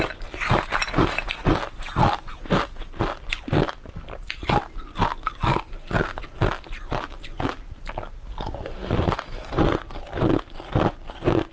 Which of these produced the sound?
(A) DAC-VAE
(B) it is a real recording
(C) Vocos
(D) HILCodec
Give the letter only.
B